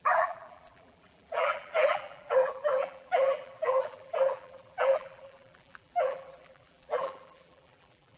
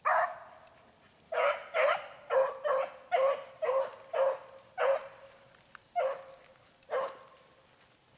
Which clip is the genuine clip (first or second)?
second